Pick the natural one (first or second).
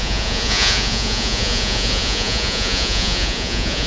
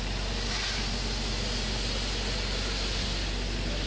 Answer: second